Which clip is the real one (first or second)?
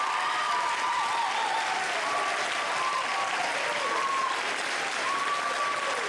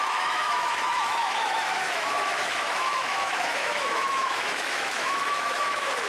first